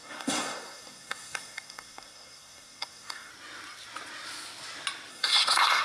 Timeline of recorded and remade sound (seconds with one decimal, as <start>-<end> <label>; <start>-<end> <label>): 0.0-3.3 remade; 3.3-5.1 recorded; 5.1-5.8 remade